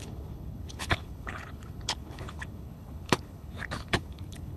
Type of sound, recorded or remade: remade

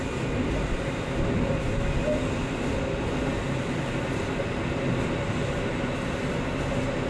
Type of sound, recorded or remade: recorded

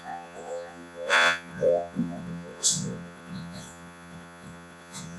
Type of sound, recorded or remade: remade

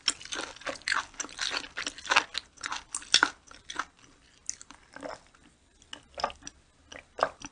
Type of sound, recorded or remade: recorded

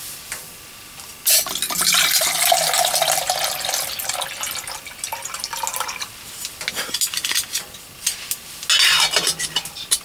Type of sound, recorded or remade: recorded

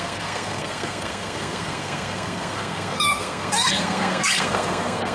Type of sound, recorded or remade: remade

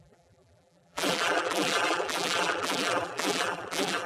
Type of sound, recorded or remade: remade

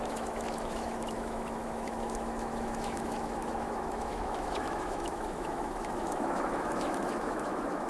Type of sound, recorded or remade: remade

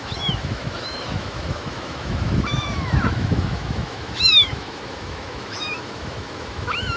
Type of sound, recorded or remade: remade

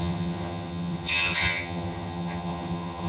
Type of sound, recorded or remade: remade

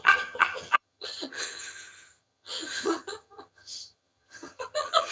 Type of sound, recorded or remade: remade